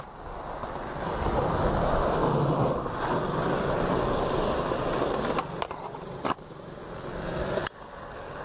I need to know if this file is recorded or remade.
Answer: recorded